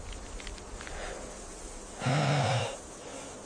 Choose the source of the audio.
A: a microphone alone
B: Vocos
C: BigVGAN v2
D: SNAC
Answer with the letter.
A